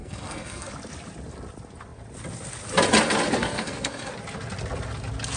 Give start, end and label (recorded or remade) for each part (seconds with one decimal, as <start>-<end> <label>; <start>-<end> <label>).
0.0-0.7 remade; 0.7-3.4 recorded; 3.4-4.1 remade; 4.1-5.4 recorded